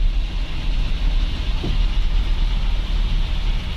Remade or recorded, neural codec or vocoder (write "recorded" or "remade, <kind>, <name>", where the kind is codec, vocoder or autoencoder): recorded